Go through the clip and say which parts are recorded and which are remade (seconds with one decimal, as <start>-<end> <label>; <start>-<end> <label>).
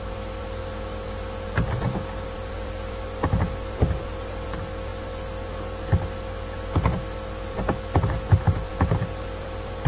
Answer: 0.0-0.6 remade; 0.6-2.1 recorded; 2.1-4.9 remade; 4.9-8.7 recorded; 8.7-9.9 remade